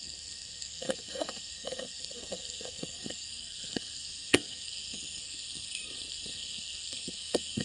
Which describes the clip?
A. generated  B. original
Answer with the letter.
A